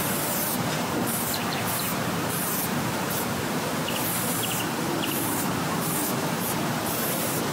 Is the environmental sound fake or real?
fake